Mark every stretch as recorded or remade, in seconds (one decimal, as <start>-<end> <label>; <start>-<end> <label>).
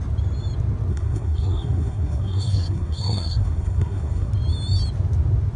0.0-0.9 recorded; 0.9-4.3 remade; 4.3-5.6 recorded